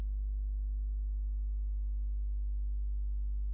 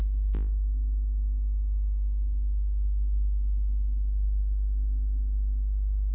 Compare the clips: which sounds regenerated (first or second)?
second